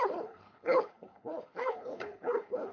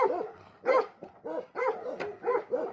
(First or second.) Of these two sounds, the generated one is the first